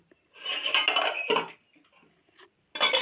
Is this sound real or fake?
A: real